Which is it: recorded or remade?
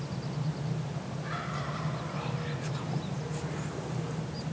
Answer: recorded